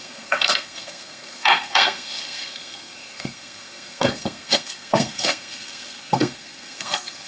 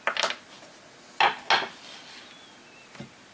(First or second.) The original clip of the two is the second